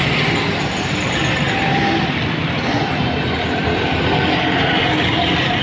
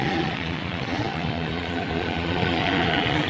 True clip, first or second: first